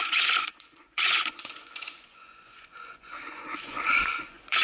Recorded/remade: remade